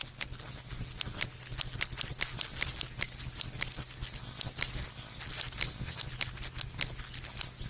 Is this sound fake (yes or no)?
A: no